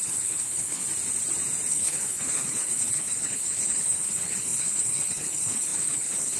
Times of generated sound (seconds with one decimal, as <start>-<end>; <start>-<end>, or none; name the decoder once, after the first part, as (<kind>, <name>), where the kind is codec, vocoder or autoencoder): 0.0-0.8 (codec, HILCodec); 1.7-6.4